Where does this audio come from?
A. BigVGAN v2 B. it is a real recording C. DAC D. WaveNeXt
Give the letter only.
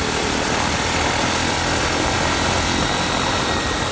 B